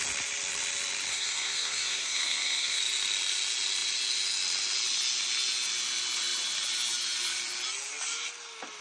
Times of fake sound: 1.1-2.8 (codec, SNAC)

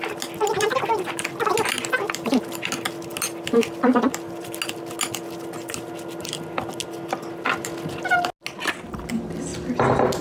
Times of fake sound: none

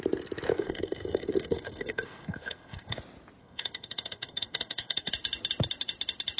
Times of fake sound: 0.5-3.0 (codec, SNAC); 3.4-5.1

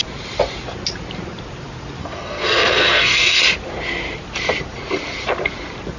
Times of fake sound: 2.0-3.4 (codec, SNAC)